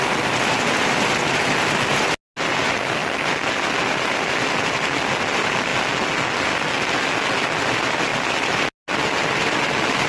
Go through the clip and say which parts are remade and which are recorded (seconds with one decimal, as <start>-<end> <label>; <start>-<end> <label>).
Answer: 0.0-10.1 recorded